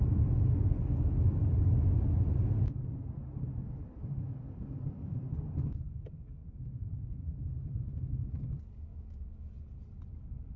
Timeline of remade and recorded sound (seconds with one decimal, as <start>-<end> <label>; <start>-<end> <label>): 0.0-6.4 recorded; 6.4-7.6 remade; 7.6-8.9 recorded; 8.9-9.4 remade; 9.4-10.6 recorded

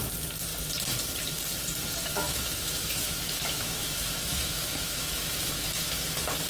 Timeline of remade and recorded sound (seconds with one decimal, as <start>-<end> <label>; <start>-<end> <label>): 0.0-2.1 recorded; 2.1-6.0 remade; 6.0-6.5 recorded